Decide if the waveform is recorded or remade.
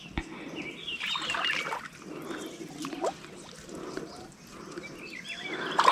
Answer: recorded